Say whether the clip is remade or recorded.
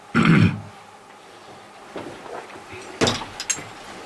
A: recorded